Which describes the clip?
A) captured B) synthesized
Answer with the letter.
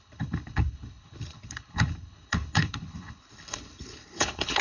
B